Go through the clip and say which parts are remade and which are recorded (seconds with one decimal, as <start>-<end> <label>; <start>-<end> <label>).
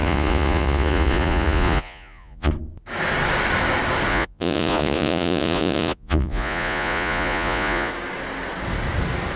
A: 0.0-2.5 remade; 2.5-4.1 recorded; 4.1-7.9 remade; 7.9-9.4 recorded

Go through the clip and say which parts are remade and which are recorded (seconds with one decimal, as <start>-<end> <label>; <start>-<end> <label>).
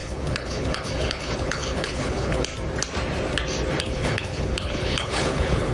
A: 0.0-2.5 remade; 2.5-3.8 recorded; 3.8-5.7 remade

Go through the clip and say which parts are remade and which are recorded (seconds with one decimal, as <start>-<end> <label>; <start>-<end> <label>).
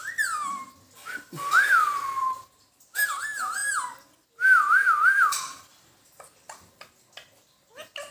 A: 0.0-8.1 recorded